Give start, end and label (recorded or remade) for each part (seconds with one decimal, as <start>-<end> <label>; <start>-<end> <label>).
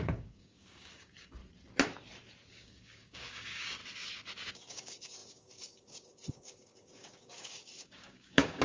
0.0-1.4 remade; 1.4-2.5 recorded; 2.5-3.8 remade; 3.8-4.5 recorded; 4.5-8.6 remade